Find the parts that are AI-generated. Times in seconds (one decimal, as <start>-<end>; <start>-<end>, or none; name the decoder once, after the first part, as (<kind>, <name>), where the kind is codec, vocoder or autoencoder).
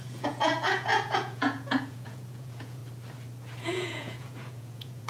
0.0-2.8 (vocoder, Vocos); 3.6-5.1